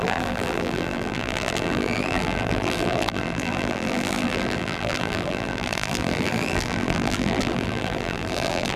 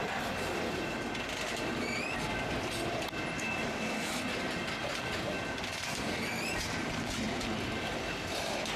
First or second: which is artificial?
first